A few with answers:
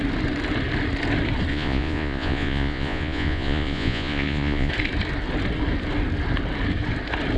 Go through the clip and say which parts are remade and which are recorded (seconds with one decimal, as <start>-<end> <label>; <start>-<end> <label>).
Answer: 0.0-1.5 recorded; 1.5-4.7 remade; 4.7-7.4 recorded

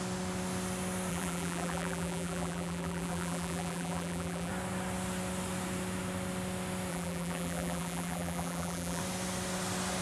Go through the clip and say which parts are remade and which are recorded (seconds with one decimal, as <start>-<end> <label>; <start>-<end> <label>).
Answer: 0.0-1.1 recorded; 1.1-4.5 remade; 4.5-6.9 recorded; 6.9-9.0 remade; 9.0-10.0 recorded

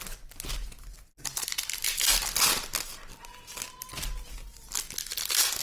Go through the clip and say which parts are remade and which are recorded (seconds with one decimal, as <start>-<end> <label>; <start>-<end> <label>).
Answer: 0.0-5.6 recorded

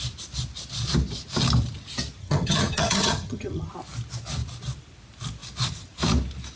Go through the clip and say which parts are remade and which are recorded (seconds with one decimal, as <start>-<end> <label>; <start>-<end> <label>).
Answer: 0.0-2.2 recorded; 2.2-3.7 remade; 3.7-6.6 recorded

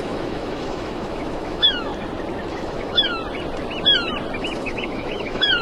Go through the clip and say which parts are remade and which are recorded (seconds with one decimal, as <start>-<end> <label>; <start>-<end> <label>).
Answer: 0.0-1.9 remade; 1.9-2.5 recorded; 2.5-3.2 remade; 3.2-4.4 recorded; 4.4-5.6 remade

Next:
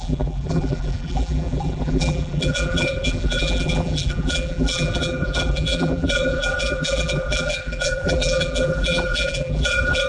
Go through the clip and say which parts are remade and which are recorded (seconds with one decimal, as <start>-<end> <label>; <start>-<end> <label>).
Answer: 0.0-10.1 remade

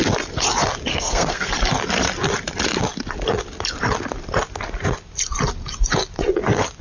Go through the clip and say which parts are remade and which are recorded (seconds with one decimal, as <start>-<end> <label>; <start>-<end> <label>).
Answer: 0.0-0.9 recorded; 0.9-1.5 remade; 1.5-6.8 recorded